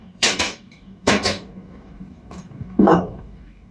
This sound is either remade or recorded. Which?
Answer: remade